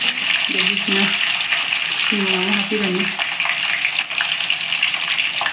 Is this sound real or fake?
real